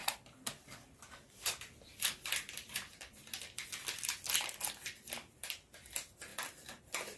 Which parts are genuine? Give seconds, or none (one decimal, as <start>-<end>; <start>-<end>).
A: 0.0-7.2